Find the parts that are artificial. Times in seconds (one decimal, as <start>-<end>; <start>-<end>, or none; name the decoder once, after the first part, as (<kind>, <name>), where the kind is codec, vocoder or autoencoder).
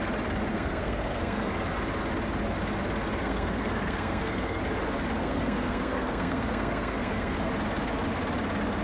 0.5-1.5 (codec, SNAC); 3.2-4.6; 5.2-7.5